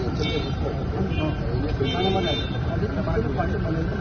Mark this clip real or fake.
real